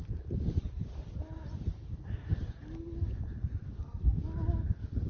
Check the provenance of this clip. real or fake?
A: real